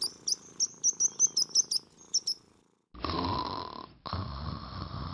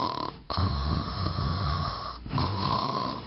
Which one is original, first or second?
first